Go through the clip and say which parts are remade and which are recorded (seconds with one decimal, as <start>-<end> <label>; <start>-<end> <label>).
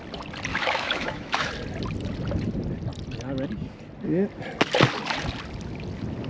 0.0-0.5 recorded; 0.5-1.5 remade; 1.5-6.3 recorded